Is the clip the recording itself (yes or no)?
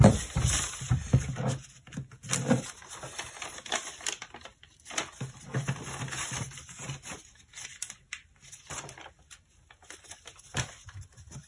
no